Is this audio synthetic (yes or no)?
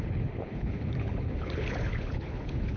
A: yes